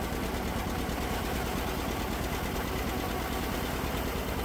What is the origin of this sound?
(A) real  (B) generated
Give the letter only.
A